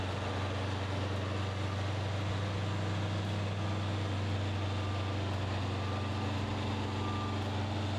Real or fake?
real